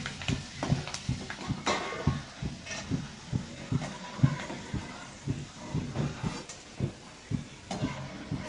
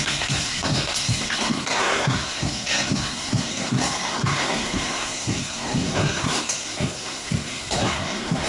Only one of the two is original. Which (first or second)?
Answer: first